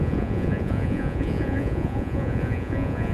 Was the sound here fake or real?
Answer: fake